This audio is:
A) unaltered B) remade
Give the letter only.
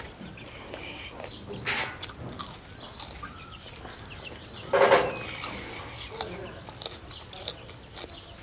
A